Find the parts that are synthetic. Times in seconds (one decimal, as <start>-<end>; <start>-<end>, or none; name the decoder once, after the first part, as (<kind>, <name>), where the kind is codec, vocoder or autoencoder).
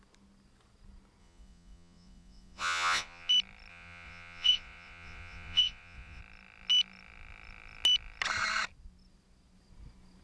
1.2-3.3 (vocoder, Vocos); 3.7-6.2